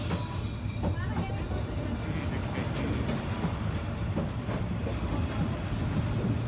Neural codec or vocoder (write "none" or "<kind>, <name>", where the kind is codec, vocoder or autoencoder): none